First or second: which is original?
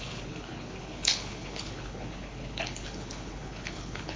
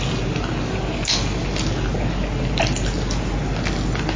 second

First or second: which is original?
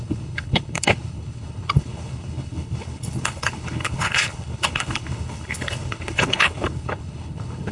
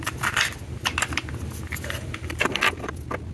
second